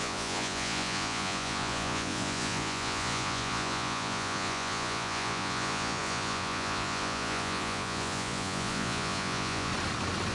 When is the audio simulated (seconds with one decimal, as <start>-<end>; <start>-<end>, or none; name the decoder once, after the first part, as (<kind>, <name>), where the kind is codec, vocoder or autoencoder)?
0.0-9.7 (vocoder, Vocos)